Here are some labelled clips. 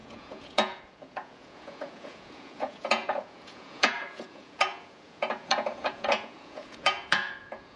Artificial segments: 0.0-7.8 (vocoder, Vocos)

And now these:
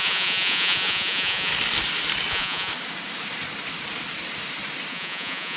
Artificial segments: 0.0-1.5 (vocoder, Vocos); 2.3-2.7; 4.9-5.6

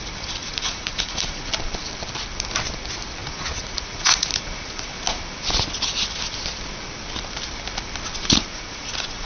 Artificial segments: 0.4-1.5 (vocoder, Vocos); 3.2-4.9; 8.5-9.3

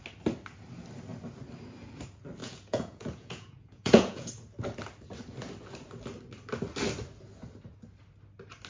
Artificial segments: 2.4-4.3 (vocoder, Vocos)

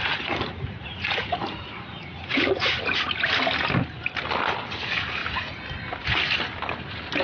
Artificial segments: 0.0-2.7 (vocoder, Vocos); 5.2-5.7

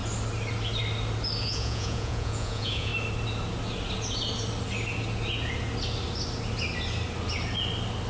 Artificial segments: 1.4-2.9 (vocoder, Vocos)